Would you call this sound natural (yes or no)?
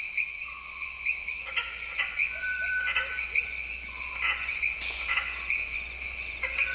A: no